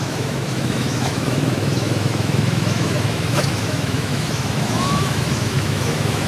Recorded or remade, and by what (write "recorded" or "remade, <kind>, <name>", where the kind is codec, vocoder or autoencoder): remade, autoencoder, DAC-VAE